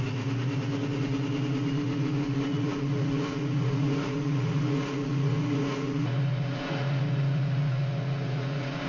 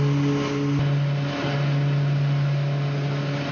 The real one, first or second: second